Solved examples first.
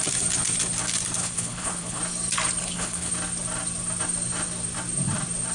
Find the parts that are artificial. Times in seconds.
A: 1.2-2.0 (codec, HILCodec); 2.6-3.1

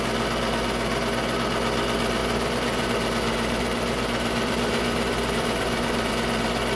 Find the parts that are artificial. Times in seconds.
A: 2.2-6.1 (vocoder, BigVGAN v2)

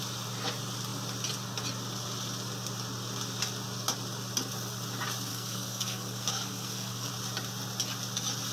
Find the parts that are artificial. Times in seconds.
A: 5.3-7.1 (codec, SNAC)

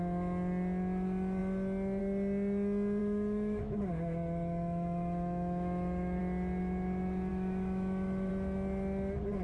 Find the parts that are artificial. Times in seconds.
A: 3.0-6.2 (autoencoder, DAC-VAE); 7.3-8.3

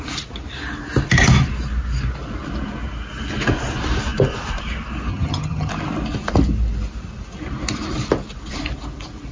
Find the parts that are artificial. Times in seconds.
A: 5.1-5.7 (vocoder, HiFi-GAN)